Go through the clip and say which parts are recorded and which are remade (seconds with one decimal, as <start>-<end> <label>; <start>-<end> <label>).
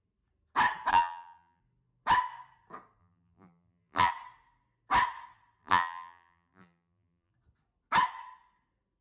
0.0-0.9 recorded; 0.9-1.6 remade; 1.6-3.0 recorded; 3.0-4.1 remade; 4.1-5.6 recorded; 5.6-7.3 remade; 7.3-9.0 recorded